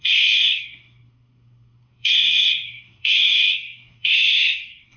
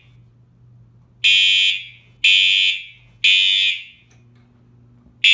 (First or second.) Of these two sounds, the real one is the second